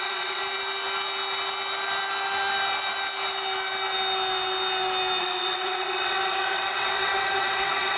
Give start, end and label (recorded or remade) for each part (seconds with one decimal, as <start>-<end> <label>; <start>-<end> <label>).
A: 0.0-0.4 remade; 0.4-5.2 recorded; 5.2-8.0 remade